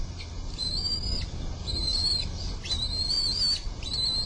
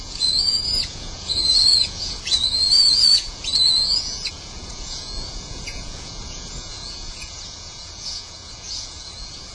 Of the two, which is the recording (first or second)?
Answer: first